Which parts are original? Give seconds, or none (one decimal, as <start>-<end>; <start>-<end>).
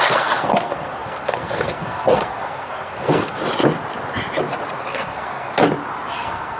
3.4-4.9; 5.5-6.1